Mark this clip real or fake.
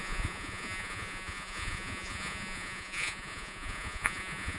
fake